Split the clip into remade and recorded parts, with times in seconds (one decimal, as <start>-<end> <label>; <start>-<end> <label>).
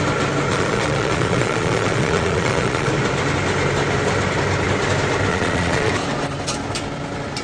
0.0-0.5 recorded; 0.5-2.9 remade; 2.9-5.3 recorded; 5.3-5.9 remade; 5.9-7.4 recorded